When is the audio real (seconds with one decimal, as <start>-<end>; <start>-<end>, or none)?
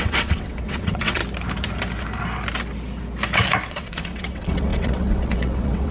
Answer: 1.2-3.7